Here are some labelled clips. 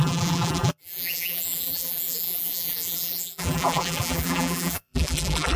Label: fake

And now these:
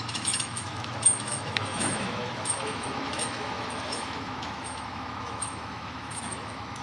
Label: fake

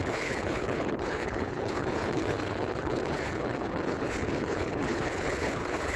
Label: fake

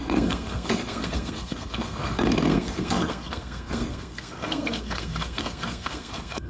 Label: fake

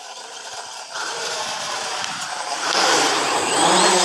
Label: fake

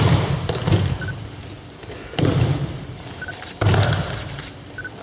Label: real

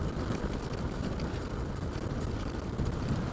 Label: fake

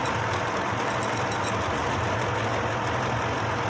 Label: real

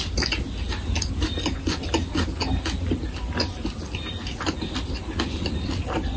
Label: real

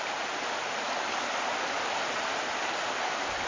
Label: real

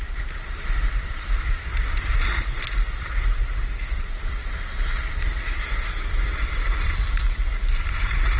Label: fake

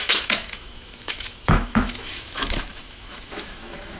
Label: fake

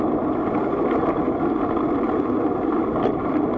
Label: real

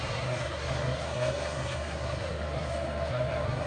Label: fake